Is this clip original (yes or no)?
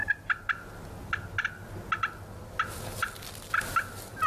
yes